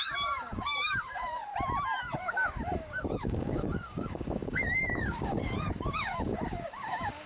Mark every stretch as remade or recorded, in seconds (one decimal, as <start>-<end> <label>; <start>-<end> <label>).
0.0-1.5 remade; 1.5-2.0 recorded; 2.0-7.3 remade